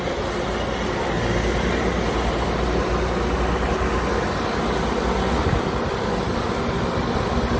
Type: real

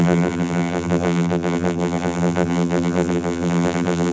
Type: fake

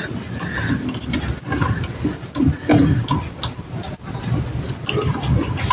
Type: real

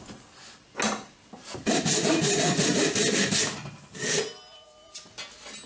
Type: real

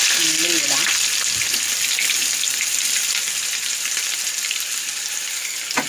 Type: fake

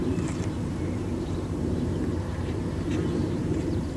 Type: fake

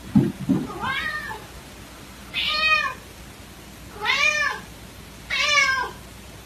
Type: real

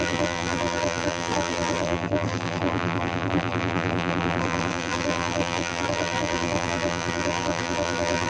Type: fake